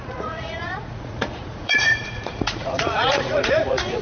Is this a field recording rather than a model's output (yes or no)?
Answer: no